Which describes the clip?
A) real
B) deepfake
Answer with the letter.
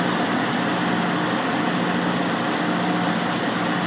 A